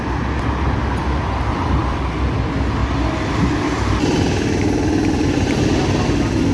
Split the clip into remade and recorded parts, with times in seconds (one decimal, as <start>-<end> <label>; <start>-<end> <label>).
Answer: 0.0-1.5 recorded; 1.5-2.0 remade; 2.0-2.8 recorded; 2.8-4.0 remade; 4.0-6.5 recorded